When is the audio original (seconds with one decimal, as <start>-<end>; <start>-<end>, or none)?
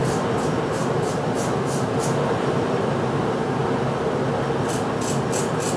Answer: 3.2-5.8